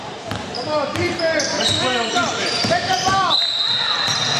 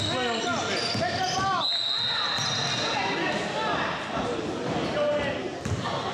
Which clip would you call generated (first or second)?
first